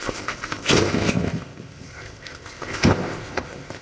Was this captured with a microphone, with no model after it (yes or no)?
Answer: no